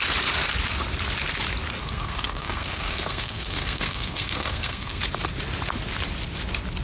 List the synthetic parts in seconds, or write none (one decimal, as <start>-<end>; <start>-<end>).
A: 1.8-5.0